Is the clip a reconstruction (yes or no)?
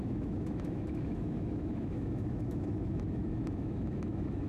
yes